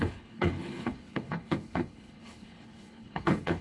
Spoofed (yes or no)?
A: yes